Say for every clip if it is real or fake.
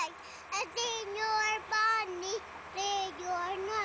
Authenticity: real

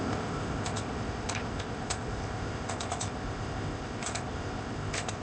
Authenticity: fake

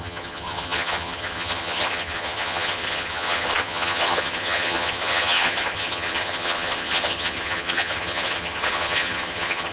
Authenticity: fake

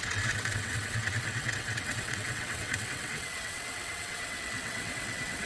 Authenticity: fake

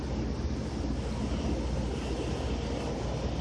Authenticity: real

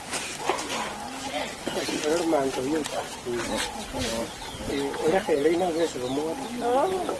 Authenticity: real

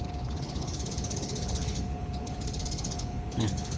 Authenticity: fake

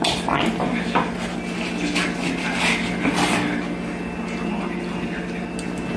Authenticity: real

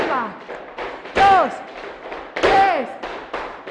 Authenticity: real